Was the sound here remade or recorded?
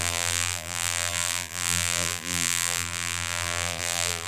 remade